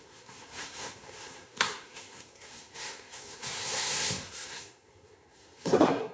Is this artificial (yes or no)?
yes